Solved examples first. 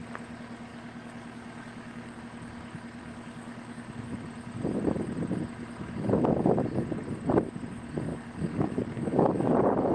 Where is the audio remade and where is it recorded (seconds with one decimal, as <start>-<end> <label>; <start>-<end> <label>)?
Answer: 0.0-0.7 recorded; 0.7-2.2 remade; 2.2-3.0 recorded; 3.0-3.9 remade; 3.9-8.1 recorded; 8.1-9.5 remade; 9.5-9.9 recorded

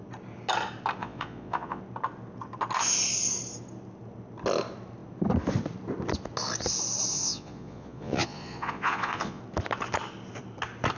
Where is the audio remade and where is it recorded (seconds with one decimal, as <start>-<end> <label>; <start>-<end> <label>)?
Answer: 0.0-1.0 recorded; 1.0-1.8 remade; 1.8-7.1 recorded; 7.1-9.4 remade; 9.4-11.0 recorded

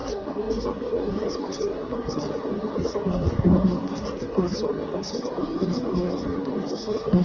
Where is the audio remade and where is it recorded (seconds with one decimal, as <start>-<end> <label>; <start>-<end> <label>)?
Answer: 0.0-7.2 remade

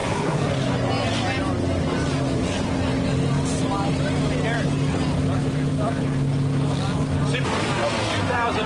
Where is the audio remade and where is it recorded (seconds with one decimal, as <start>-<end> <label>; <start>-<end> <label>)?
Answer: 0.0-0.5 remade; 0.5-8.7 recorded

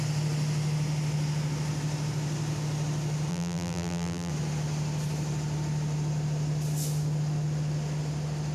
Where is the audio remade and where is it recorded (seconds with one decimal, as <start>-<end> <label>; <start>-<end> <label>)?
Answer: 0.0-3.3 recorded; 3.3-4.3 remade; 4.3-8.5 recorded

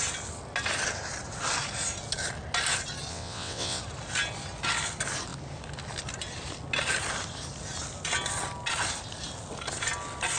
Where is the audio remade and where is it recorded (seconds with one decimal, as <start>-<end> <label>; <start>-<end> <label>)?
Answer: 0.0-3.1 recorded; 3.1-3.8 remade; 3.8-10.4 recorded